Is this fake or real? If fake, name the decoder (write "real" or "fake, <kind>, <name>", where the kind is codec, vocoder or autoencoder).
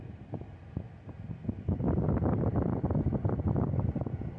real